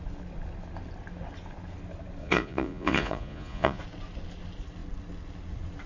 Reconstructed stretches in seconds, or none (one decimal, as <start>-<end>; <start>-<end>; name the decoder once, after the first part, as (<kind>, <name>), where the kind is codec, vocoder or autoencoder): 2.2-3.8 (vocoder, Vocos)